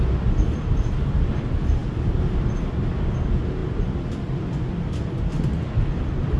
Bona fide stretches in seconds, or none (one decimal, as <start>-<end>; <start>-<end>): 0.0-6.4